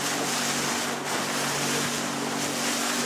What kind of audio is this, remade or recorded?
recorded